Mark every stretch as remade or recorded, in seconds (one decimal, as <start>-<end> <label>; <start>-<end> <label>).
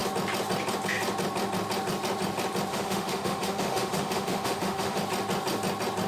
0.0-2.7 recorded; 2.7-5.0 remade; 5.0-6.1 recorded